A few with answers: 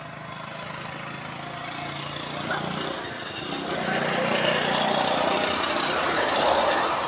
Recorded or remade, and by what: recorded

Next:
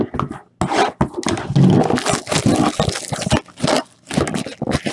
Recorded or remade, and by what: recorded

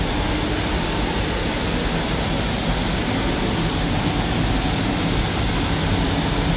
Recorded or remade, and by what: recorded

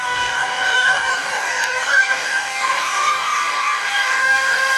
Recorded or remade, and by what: remade, codec, DAC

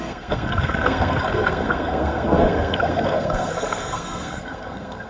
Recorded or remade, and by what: remade, codec, SNAC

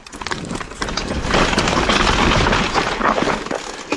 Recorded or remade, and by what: recorded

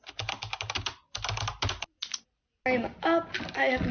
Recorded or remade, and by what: recorded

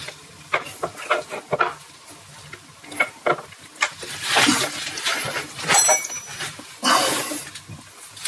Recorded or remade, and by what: recorded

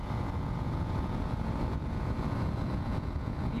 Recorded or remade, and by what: remade, vocoder, Vocos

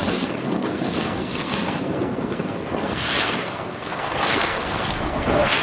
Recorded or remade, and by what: remade, codec, SNAC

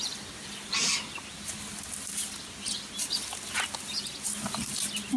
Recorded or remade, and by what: recorded